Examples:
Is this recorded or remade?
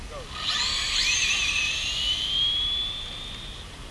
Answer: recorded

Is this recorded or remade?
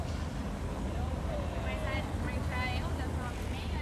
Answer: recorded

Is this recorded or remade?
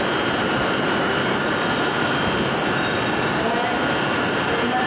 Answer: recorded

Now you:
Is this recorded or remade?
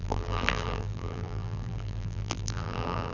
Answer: remade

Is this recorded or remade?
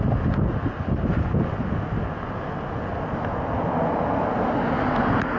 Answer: recorded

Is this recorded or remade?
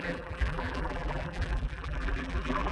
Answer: remade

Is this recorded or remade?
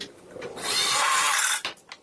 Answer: recorded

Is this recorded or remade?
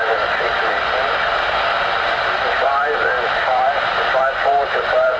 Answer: remade